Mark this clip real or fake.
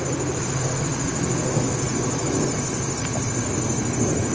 real